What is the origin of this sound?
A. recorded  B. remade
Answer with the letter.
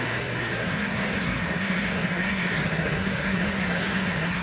B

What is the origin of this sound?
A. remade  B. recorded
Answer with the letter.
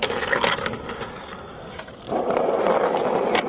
B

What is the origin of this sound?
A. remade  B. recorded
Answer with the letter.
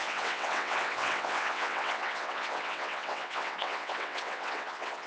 A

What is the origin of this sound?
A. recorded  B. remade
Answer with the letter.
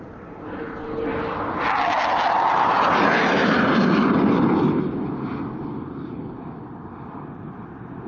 A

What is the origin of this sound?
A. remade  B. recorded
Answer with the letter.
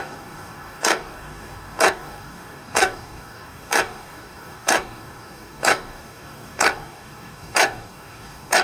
A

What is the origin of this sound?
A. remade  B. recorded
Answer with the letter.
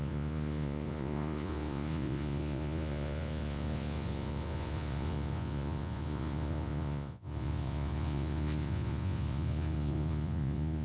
A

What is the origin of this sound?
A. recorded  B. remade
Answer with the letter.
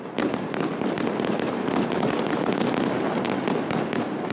A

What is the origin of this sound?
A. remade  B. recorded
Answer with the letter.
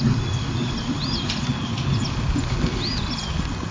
B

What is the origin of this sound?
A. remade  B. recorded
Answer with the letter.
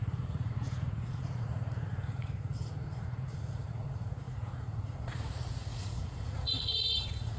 A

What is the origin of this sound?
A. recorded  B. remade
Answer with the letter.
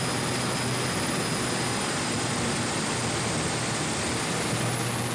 A